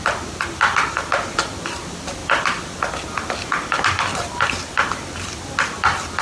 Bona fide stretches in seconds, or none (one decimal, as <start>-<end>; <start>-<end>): 0.0-6.2